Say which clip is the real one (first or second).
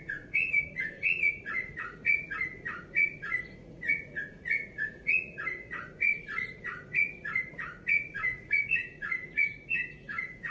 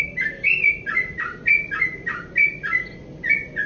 second